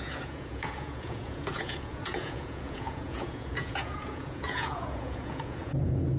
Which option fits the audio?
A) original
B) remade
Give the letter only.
B